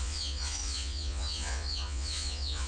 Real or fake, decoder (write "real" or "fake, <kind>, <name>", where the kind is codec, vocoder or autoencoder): fake, vocoder, Vocos